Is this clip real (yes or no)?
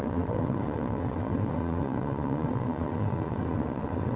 no